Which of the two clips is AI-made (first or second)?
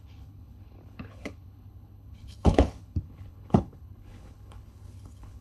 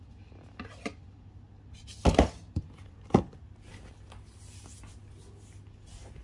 first